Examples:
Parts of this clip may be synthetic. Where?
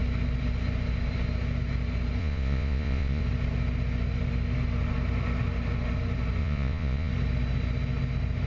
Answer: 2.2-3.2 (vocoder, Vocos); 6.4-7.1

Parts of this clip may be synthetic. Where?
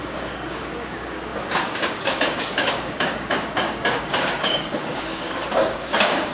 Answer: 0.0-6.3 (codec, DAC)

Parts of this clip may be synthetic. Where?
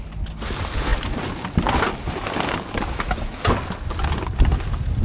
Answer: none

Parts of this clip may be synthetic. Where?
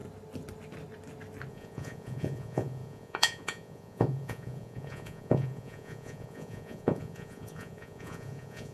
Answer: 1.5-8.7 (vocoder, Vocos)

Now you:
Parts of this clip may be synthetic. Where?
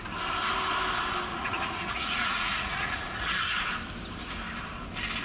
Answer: 1.3-3.4 (vocoder, Vocos)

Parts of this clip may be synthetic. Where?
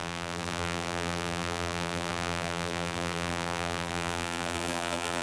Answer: 0.0-5.2 (vocoder, BigVGAN v2)